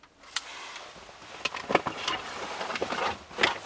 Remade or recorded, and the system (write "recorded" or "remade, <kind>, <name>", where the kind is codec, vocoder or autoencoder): recorded